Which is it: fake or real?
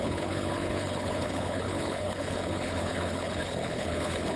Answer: fake